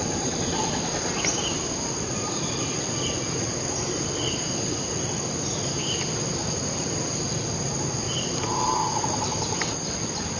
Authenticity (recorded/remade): recorded